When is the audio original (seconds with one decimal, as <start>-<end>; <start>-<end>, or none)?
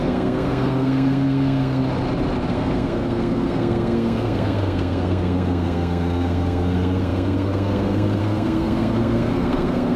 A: 1.8-2.5